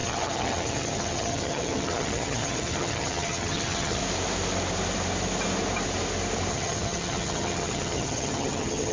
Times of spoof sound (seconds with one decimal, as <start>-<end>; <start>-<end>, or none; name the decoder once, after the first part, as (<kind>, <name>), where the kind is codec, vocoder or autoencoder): 0.0-4.0 (vocoder, HiFi-GAN); 6.5-8.9

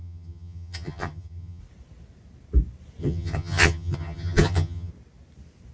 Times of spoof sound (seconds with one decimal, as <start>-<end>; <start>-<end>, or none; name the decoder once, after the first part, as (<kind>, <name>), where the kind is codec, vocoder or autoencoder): 0.0-1.6 (vocoder, HiFi-GAN); 3.0-4.9

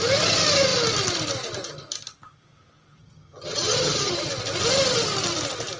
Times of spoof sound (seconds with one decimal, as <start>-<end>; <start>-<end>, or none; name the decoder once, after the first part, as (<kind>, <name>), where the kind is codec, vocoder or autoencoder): 3.0-4.3 (vocoder, HiFi-GAN)

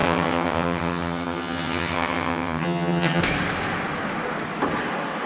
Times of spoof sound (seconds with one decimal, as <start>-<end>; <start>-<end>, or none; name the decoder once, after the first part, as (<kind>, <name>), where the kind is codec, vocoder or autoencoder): 0.0-3.2 (vocoder, HiFi-GAN)

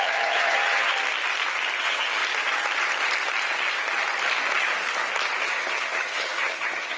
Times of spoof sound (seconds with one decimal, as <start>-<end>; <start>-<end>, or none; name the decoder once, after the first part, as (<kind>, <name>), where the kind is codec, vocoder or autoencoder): 0.0-0.9 (vocoder, HiFi-GAN); 1.8-2.2; 5.4-7.0

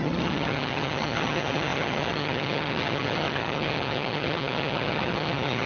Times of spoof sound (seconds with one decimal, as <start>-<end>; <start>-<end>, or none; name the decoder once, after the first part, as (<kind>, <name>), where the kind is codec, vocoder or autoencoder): 0.0-5.7 (vocoder, HiFi-GAN)

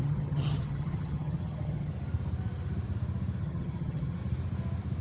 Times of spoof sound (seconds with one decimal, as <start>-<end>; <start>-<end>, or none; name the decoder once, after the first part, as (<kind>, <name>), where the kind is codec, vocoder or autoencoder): 0.0-1.9 (vocoder, HiFi-GAN); 3.4-4.2